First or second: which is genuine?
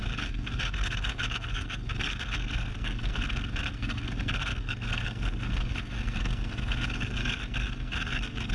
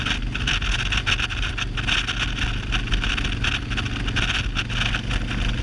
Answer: second